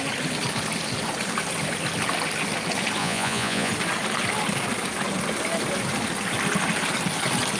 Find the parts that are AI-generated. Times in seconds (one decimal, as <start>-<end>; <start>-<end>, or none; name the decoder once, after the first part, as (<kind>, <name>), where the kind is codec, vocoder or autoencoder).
3.0-3.7 (vocoder, Vocos)